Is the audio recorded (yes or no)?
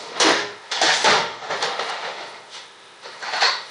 no